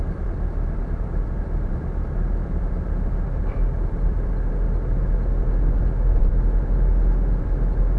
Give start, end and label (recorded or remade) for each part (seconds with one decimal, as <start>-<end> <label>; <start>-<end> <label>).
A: 0.0-4.5 remade; 4.5-8.0 recorded